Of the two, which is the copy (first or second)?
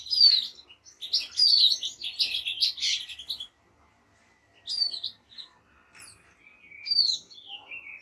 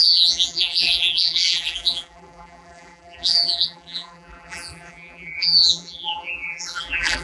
second